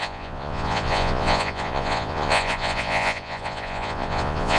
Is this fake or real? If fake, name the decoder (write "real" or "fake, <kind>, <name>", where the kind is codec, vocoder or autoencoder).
fake, vocoder, Vocos